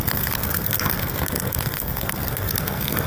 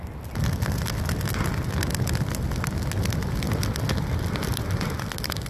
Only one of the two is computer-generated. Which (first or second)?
first